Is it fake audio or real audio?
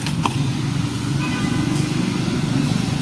fake